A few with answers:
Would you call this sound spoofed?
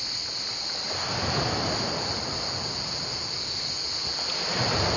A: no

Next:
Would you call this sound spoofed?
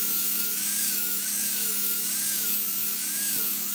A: yes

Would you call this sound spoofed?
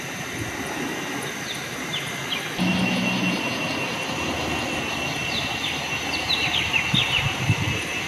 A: no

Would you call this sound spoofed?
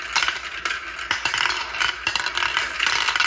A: no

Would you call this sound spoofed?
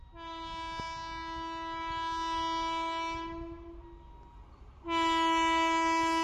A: no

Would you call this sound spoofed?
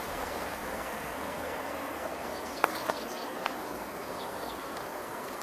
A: yes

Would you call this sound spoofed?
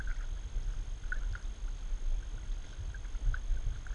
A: no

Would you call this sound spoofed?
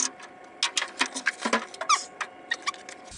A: no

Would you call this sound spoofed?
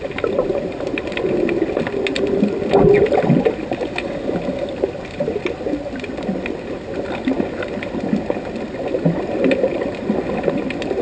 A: no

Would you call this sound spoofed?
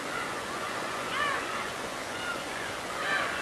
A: yes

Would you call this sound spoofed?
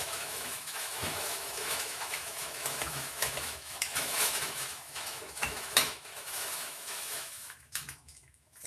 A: yes